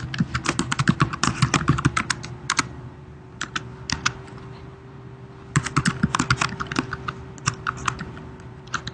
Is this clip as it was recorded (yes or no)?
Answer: yes